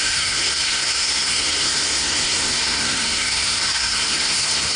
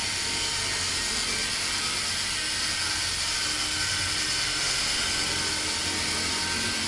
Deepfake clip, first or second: first